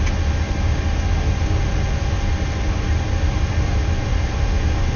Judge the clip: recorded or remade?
recorded